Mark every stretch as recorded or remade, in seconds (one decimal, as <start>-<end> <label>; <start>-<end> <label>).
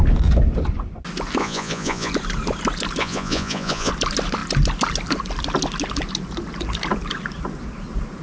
0.0-1.4 recorded; 1.4-2.1 remade; 2.1-3.0 recorded; 3.0-3.9 remade; 3.9-8.2 recorded